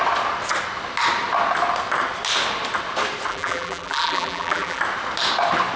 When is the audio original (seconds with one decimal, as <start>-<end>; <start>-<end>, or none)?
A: 0.0-3.3; 4.8-5.8